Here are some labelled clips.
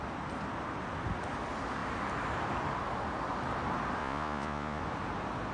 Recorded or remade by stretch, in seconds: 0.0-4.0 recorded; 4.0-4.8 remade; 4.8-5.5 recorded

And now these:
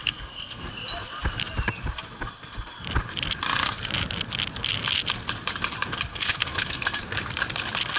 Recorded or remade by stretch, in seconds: 0.0-0.7 remade; 0.7-6.1 recorded; 6.1-7.0 remade; 7.0-8.0 recorded

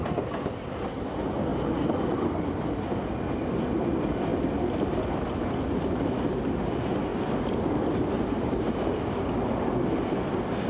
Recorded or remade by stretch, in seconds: 0.0-10.7 recorded

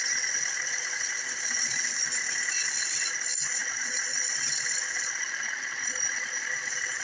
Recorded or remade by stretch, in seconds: 0.0-7.0 recorded

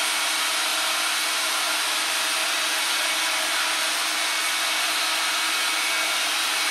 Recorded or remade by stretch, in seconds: 0.0-0.7 remade; 0.7-1.4 recorded; 1.4-2.3 remade; 2.3-6.2 recorded; 6.2-6.7 remade

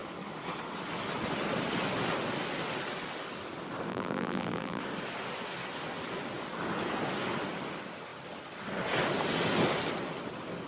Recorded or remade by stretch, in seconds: 0.0-3.9 recorded; 3.9-4.8 remade; 4.8-10.7 recorded